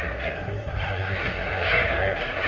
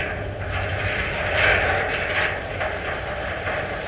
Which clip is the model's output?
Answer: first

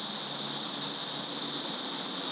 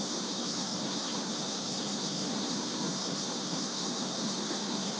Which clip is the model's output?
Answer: second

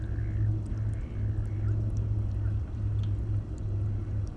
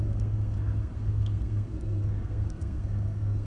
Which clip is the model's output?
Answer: second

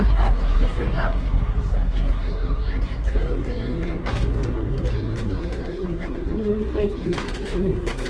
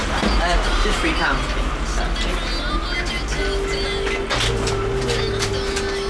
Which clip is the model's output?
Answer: first